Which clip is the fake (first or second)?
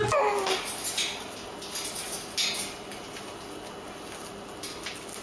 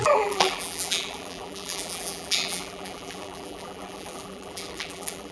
second